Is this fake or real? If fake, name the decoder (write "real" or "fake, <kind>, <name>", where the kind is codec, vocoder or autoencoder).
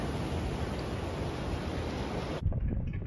real